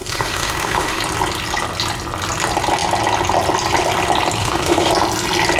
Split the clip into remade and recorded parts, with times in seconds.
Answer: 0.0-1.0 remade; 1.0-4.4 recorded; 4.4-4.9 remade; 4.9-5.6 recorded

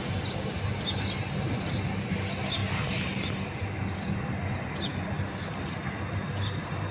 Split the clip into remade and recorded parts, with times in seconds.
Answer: 0.0-6.9 recorded

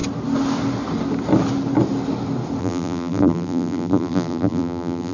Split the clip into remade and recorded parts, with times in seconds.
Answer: 0.0-2.6 recorded; 2.6-5.1 remade

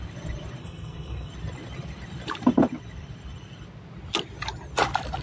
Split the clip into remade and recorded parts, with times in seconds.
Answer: 0.0-0.6 recorded; 0.6-1.3 remade; 1.3-5.2 recorded

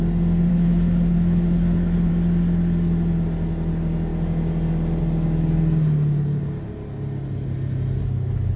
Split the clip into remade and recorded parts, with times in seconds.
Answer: 0.0-0.5 recorded; 0.5-2.1 remade; 2.1-8.0 recorded; 8.0-8.6 remade

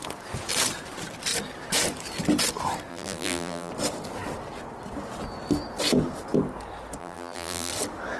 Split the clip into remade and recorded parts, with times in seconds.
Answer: 0.0-2.9 recorded; 2.9-3.7 remade; 3.7-7.0 recorded; 7.0-7.7 remade; 7.7-8.2 recorded